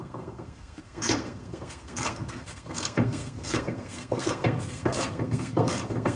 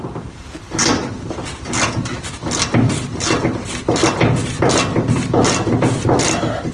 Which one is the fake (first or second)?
first